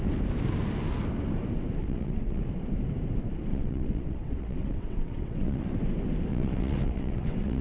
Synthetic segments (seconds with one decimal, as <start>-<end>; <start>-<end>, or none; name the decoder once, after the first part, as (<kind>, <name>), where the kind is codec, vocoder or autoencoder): 1.8-2.4 (vocoder, WaveNeXt); 3.5-5.7; 6.3-7.6